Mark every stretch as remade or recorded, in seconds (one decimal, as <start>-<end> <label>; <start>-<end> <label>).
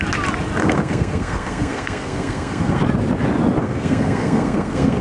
0.0-0.6 recorded; 0.6-2.8 remade; 2.8-3.6 recorded; 3.6-5.0 remade